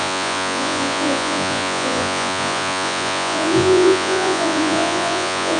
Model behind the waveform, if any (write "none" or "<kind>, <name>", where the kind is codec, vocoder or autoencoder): vocoder, Vocos